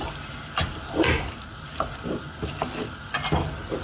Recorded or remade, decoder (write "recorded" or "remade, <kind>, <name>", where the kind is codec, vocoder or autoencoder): recorded